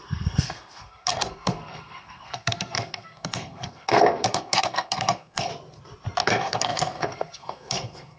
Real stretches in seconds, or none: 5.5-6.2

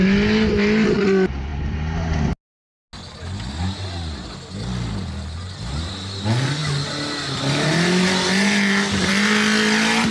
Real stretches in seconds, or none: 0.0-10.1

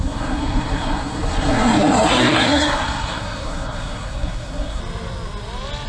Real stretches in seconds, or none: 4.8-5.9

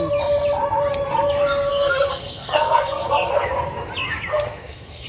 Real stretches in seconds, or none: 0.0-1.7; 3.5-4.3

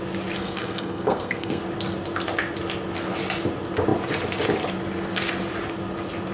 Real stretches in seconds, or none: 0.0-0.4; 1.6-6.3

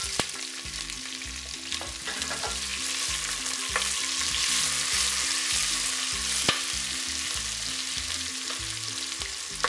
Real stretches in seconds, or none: 0.0-9.7

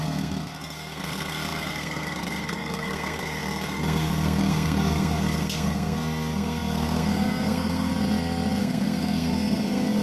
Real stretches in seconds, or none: 7.9-8.6